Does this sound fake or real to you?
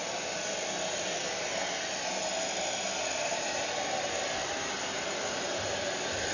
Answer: real